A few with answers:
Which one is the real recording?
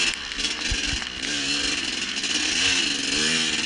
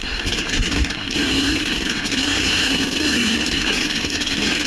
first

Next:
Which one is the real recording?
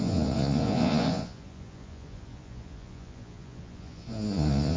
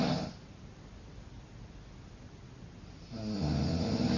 second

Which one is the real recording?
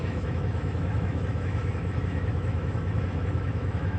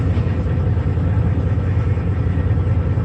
second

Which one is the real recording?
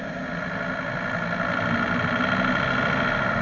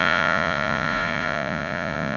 first